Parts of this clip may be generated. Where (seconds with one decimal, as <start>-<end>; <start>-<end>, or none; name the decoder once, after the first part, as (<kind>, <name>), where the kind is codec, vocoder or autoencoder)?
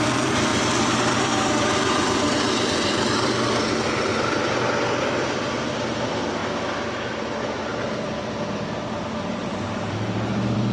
0.0-0.5 (vocoder, BigVGAN v2); 1.2-4.1; 5.2-6.4; 9.5-10.7